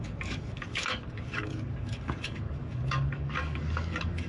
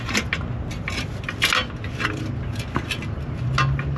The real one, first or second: second